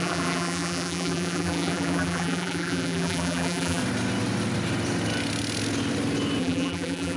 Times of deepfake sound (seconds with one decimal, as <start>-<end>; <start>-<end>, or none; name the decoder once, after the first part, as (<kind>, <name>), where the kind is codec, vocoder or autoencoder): 0.0-3.8 (vocoder, BigVGAN v2); 6.4-7.2